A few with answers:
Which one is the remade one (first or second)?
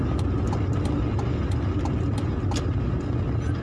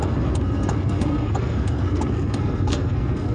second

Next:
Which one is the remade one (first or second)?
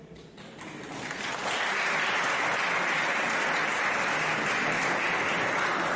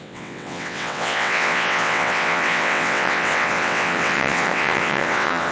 second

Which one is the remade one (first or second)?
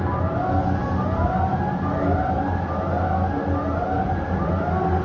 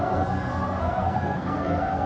second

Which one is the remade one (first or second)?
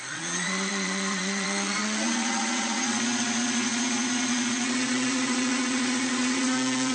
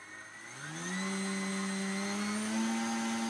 first